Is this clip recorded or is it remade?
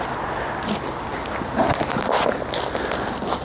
recorded